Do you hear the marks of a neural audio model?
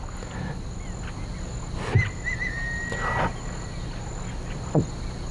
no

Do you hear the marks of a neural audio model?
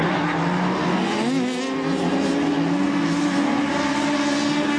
no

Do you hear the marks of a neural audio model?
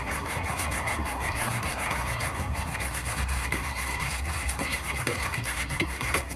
yes